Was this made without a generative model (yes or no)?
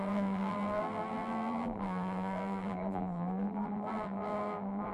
no